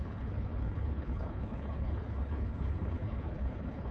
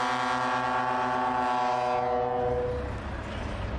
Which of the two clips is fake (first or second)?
first